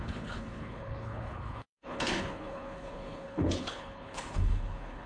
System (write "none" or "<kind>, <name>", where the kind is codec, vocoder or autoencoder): codec, HILCodec